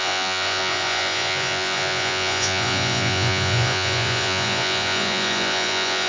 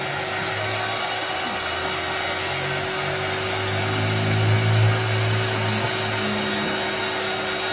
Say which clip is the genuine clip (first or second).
second